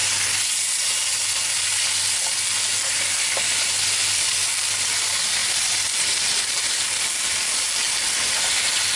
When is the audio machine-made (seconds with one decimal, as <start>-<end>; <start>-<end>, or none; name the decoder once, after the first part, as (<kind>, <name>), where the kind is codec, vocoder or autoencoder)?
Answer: none